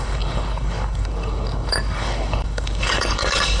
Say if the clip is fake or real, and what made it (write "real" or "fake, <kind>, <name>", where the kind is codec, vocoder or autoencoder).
fake, codec, DAC